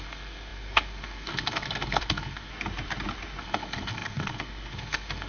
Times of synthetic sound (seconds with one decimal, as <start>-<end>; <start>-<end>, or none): 0.0-2.5; 3.4-5.3

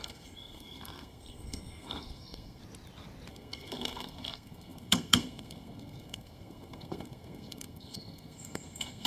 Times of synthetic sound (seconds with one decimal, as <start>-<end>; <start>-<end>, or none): 0.0-2.6; 3.3-9.1

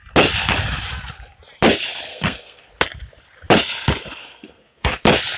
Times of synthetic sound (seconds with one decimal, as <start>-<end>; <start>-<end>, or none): 2.1-2.7; 4.2-5.0

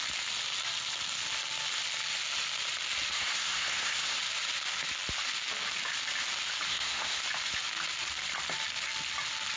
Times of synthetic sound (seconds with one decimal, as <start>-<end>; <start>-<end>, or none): 3.1-4.2; 6.7-7.2

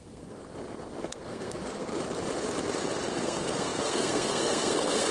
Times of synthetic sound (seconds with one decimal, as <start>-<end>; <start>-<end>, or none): 0.0-0.4; 1.0-1.9; 3.1-5.1